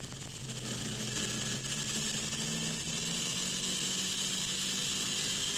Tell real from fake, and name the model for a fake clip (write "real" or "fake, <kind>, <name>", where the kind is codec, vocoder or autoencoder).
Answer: real